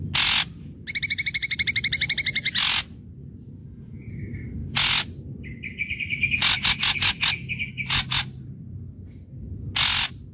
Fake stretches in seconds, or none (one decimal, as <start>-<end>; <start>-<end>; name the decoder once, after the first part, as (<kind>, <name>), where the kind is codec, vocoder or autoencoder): 3.6-4.1 (vocoder, Vocos)